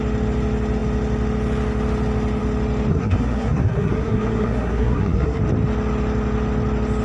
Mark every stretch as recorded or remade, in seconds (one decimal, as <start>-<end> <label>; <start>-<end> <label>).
0.0-2.9 recorded; 2.9-5.4 remade; 5.4-7.0 recorded